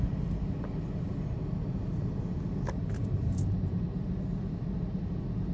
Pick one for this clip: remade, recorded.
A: recorded